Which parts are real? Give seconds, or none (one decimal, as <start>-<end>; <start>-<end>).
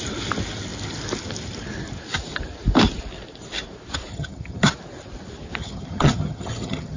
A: 0.0-4.1; 4.7-5.6